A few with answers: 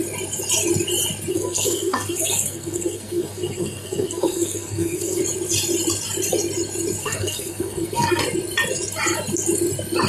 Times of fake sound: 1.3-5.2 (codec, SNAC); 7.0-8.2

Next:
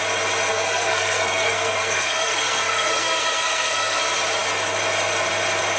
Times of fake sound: 0.5-4.0 (codec, SNAC)